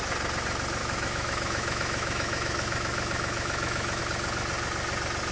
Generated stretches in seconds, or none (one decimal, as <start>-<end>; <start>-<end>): 0.8-4.0

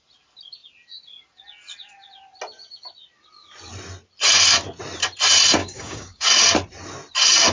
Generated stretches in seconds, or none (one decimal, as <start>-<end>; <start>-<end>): 5.6-6.3

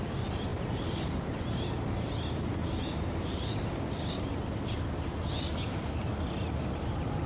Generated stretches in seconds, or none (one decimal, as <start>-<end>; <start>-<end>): 0.5-1.5; 2.6-4.2

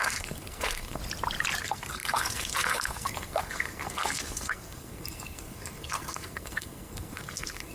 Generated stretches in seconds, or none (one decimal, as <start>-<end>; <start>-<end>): 0.0-1.0; 1.6-7.7

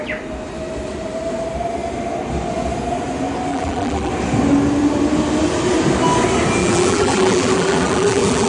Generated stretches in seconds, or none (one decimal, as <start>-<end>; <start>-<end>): 3.5-4.1; 6.6-8.5